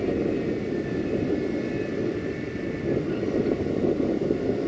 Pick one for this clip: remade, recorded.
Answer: recorded